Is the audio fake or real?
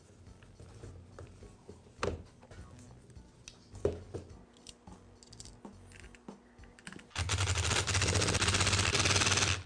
real